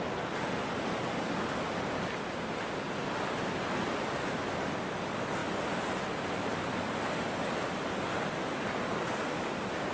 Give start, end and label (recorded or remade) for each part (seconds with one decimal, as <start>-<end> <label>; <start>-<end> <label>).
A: 0.0-9.9 recorded